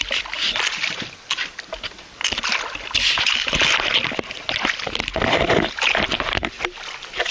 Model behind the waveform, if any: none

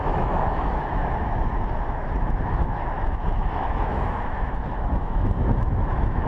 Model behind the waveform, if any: autoencoder, DAC-VAE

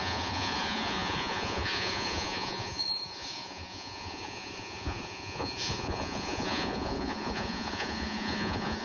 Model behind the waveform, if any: vocoder, Vocos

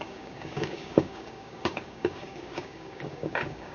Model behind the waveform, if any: codec, DAC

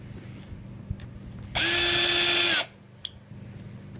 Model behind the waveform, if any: none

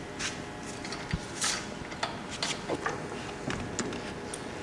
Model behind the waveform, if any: none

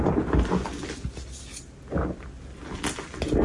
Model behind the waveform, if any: none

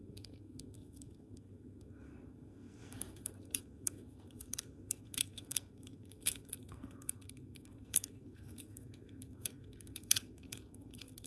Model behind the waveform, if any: codec, SNAC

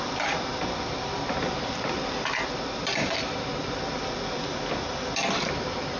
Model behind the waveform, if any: vocoder, BigVGAN v2